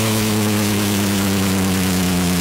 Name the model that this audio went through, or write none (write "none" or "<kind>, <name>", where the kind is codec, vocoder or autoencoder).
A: autoencoder, DAC-VAE